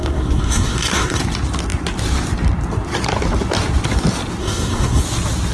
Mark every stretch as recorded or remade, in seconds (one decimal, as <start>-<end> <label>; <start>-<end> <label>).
0.0-1.2 remade; 1.2-4.4 recorded; 4.4-5.0 remade; 5.0-5.5 recorded